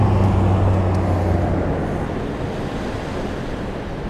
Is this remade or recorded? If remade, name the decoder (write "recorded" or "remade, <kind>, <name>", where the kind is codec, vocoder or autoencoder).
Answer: recorded